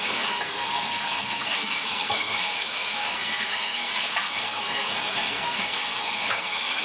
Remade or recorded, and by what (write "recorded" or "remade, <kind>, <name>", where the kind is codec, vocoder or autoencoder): remade, codec, SNAC